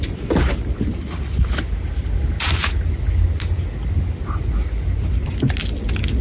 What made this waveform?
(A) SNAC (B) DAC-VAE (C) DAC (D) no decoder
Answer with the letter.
D